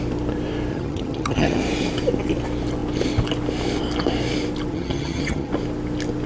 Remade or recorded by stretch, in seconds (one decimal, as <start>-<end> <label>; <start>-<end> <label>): 0.0-0.7 recorded; 0.7-1.6 remade; 1.6-4.7 recorded; 4.7-5.5 remade; 5.5-6.3 recorded